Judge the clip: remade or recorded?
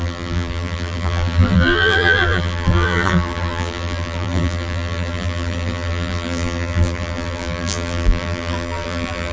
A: remade